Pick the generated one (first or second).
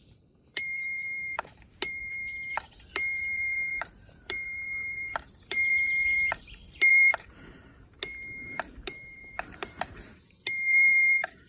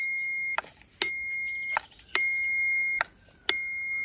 first